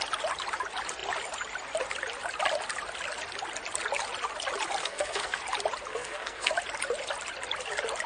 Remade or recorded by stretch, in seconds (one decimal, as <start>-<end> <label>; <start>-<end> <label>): 0.0-4.8 recorded; 4.8-5.4 remade; 5.4-5.9 recorded; 5.9-6.5 remade; 6.5-8.1 recorded